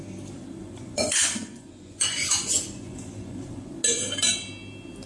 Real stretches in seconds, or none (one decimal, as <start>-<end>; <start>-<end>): 0.0-0.6; 3.7-5.1